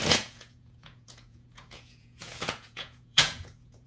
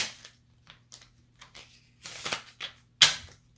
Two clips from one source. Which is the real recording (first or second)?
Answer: second